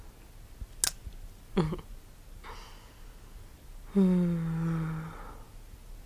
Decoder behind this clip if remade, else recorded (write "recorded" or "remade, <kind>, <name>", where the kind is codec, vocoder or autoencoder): recorded